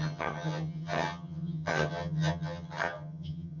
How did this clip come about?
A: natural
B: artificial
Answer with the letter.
B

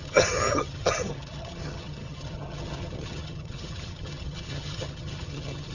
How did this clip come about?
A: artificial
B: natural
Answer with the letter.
A